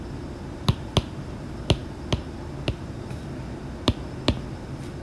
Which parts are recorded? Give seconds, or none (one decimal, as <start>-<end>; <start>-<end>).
0.0-5.0